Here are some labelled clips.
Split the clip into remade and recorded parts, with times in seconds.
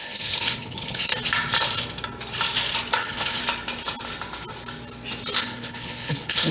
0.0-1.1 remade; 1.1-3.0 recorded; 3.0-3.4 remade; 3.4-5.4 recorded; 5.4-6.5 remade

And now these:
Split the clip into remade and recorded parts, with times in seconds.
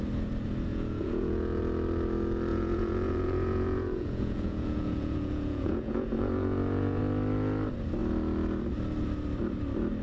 0.0-0.7 recorded; 0.7-1.6 remade; 1.6-2.5 recorded; 2.5-7.0 remade; 7.0-10.0 recorded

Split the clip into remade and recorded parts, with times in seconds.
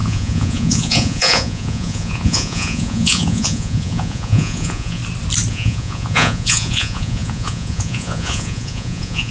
0.0-5.0 remade; 5.0-5.5 recorded; 5.5-9.3 remade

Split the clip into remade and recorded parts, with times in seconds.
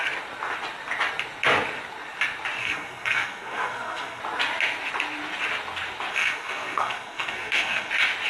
0.0-2.6 recorded; 2.6-4.2 remade; 4.2-6.1 recorded; 6.1-7.9 remade; 7.9-8.3 recorded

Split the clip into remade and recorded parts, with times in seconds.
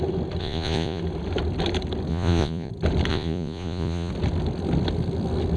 0.0-0.4 recorded; 0.4-1.0 remade; 1.0-2.1 recorded; 2.1-2.7 remade; 2.7-3.1 recorded; 3.1-4.1 remade; 4.1-5.6 recorded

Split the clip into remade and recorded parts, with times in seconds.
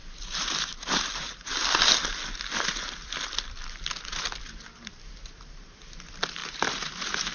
0.0-6.4 recorded; 6.4-7.3 remade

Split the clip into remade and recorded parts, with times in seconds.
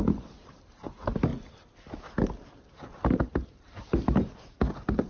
0.0-5.1 recorded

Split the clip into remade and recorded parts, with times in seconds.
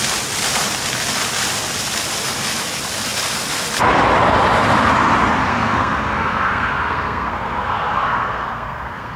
0.0-5.5 recorded; 5.5-9.2 remade